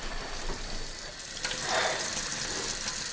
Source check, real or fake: real